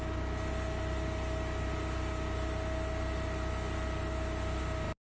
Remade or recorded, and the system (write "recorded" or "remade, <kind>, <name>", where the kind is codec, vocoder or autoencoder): recorded